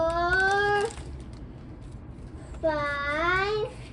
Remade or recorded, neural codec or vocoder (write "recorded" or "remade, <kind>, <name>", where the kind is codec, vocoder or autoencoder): recorded